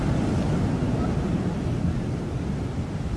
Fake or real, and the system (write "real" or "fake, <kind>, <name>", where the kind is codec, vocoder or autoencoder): real